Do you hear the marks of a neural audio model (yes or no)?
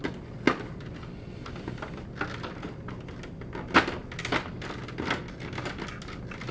no